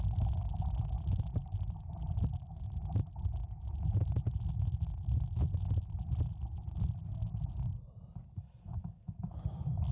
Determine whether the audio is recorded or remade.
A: recorded